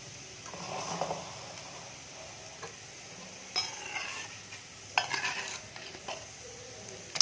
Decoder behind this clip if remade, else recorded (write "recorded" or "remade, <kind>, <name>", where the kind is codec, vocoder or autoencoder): recorded